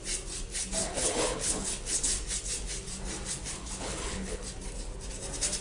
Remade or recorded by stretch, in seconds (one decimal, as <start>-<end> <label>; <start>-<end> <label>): 0.0-0.8 recorded; 0.8-2.0 remade; 2.0-3.5 recorded; 3.5-4.4 remade; 4.4-5.6 recorded